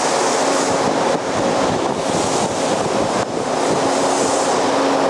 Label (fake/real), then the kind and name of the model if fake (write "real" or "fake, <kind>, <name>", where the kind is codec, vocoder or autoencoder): real